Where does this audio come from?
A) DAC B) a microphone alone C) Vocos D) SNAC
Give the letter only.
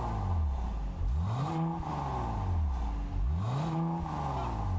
B